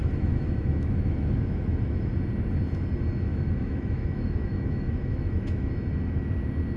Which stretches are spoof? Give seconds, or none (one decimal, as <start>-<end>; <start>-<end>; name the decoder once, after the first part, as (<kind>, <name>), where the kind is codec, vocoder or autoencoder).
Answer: 0.0-2.1 (autoencoder, DAC-VAE); 3.3-5.7